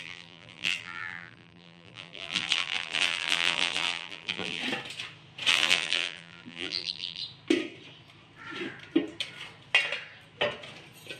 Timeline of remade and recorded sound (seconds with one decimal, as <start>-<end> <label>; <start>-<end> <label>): 0.0-4.6 remade; 4.6-5.5 recorded; 5.5-7.2 remade; 7.2-11.2 recorded

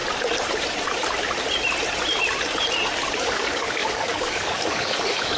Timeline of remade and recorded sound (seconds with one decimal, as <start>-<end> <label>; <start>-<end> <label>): 0.0-3.2 recorded; 3.2-5.4 remade

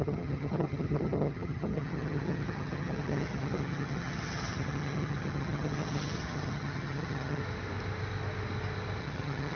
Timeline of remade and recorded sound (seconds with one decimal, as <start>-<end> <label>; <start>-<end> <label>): 0.0-7.4 remade; 7.4-9.0 recorded; 9.0-9.6 remade

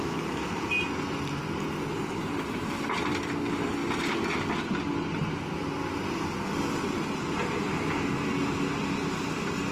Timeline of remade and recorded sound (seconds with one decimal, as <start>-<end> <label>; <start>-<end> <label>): 0.0-9.7 recorded

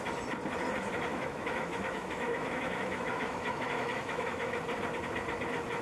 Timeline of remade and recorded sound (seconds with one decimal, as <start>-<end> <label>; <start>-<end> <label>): 0.0-1.1 recorded; 1.1-4.6 remade; 4.6-5.8 recorded